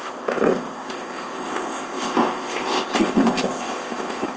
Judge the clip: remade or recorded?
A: remade